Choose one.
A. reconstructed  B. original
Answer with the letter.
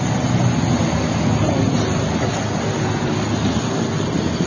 B